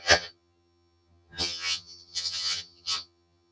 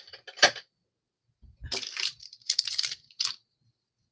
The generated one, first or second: first